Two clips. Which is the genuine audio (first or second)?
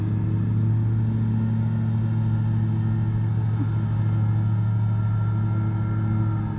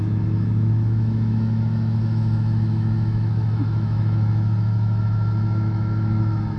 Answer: first